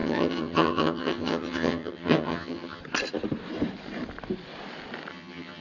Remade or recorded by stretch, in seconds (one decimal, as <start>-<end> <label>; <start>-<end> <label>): 0.0-2.8 remade; 2.8-5.1 recorded; 5.1-5.6 remade